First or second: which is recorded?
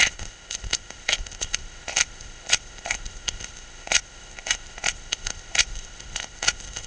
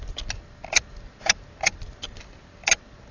second